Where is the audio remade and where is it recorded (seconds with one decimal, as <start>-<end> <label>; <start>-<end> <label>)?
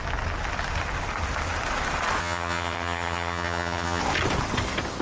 0.0-2.2 recorded; 2.2-4.0 remade; 4.0-5.0 recorded